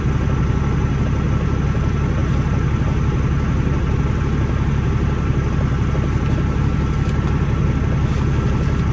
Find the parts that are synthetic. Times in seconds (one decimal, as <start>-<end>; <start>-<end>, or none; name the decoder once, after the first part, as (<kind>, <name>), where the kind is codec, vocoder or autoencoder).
none